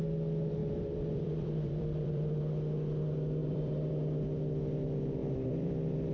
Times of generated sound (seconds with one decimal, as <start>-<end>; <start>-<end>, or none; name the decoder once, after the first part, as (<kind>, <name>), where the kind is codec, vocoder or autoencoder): 0.6-2.4 (vocoder, BigVGAN v2); 3.4-3.9; 5.2-6.1